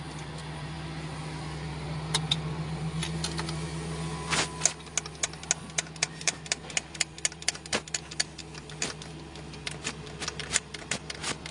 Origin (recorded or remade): recorded